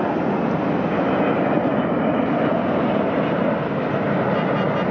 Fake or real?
real